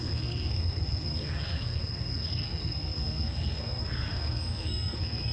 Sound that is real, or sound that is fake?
fake